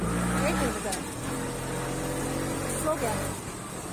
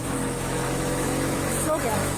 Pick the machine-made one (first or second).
second